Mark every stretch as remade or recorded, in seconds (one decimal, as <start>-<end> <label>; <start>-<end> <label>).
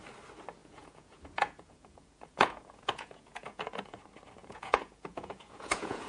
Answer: 0.0-0.6 recorded; 0.6-4.0 remade; 4.0-4.4 recorded; 4.4-6.1 remade